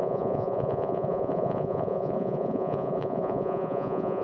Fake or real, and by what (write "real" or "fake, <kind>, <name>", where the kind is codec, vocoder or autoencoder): fake, vocoder, Vocos